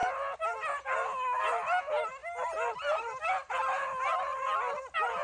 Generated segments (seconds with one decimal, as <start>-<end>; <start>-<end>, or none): none